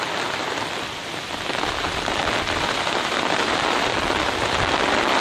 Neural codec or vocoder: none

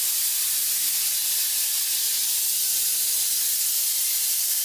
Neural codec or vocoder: none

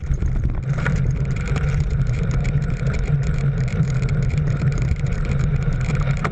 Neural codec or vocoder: vocoder, BigVGAN v2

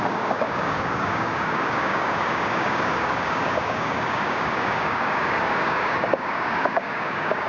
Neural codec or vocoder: codec, DAC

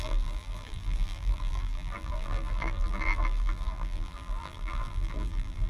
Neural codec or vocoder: vocoder, BigVGAN v2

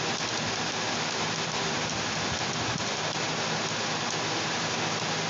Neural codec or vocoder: none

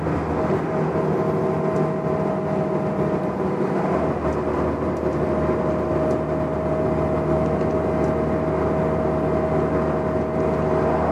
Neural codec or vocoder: none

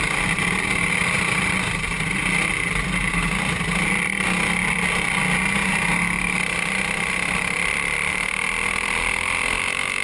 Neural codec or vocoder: none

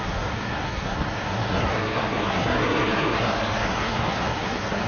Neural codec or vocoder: codec, SNAC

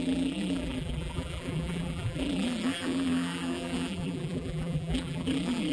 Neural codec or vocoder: vocoder, BigVGAN v2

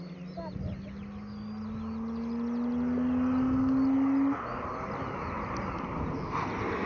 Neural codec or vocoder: none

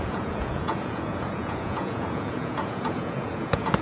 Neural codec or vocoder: vocoder, Vocos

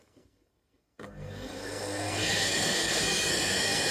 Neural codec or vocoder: codec, SNAC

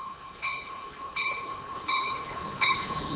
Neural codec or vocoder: codec, HILCodec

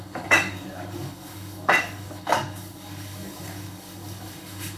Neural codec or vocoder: codec, DAC